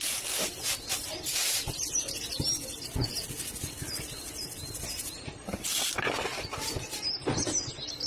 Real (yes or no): yes